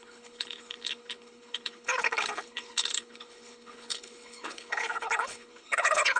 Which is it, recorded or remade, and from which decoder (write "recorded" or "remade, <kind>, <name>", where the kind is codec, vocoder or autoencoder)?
remade, codec, HILCodec